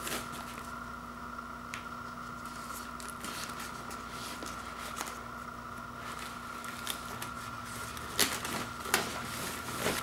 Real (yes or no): yes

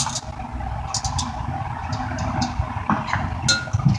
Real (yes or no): yes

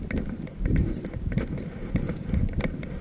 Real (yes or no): yes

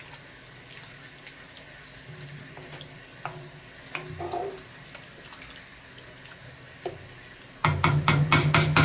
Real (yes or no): yes